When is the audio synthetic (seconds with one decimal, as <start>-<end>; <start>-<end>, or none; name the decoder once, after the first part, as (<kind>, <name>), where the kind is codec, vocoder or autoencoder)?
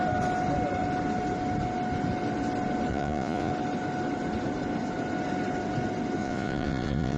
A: 2.9-3.5 (vocoder, Vocos); 6.2-7.2